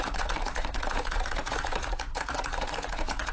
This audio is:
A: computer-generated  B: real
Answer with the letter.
A